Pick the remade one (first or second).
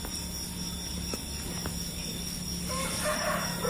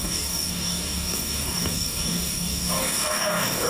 second